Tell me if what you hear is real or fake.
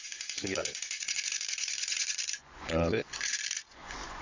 fake